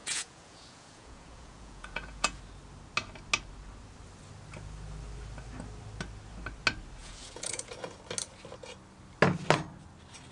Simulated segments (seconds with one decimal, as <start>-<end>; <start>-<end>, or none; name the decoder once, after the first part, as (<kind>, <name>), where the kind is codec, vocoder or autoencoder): 0.0-2.4 (vocoder, Vocos); 7.0-7.7